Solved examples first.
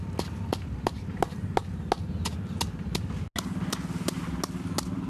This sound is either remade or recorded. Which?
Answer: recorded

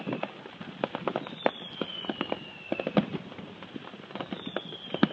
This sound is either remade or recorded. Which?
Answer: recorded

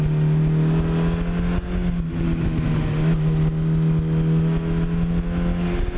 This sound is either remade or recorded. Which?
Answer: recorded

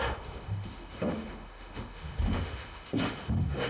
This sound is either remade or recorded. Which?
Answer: remade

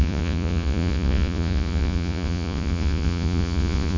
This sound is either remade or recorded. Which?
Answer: remade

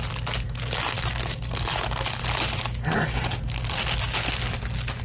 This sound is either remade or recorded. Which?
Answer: recorded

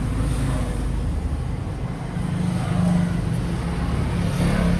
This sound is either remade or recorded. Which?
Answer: recorded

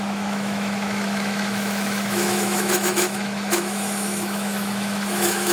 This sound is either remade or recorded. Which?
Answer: remade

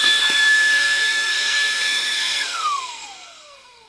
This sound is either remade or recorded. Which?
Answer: remade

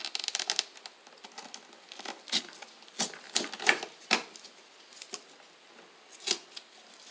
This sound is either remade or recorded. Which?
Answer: recorded